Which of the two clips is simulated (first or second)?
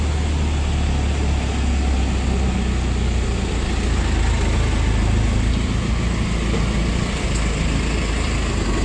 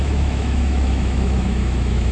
second